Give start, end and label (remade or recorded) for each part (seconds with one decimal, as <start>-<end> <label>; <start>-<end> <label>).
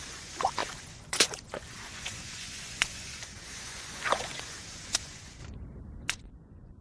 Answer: 0.0-5.4 remade; 5.4-6.1 recorded; 6.1-6.8 remade